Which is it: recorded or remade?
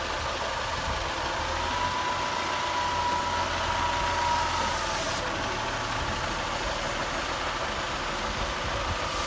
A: recorded